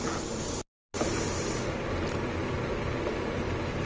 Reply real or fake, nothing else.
real